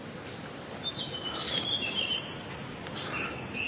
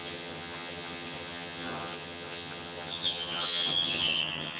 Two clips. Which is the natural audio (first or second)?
first